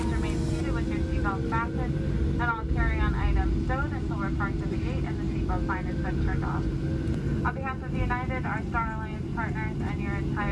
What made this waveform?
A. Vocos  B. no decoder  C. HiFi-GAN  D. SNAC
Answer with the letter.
B